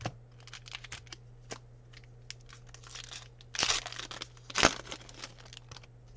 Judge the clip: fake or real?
real